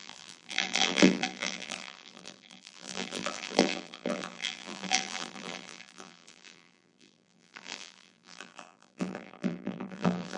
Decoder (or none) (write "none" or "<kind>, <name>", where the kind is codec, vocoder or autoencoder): vocoder, BigVGAN v2